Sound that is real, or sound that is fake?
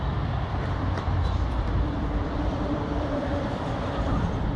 fake